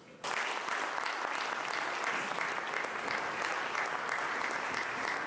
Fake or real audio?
real